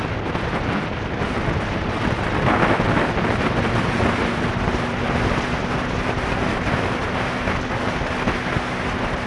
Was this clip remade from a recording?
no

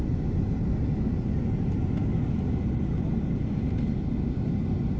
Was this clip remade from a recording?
no